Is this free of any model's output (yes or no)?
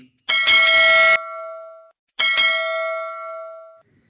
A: yes